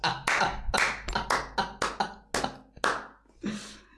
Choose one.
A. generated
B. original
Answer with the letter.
B